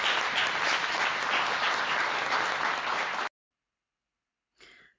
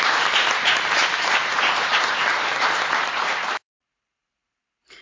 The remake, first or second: second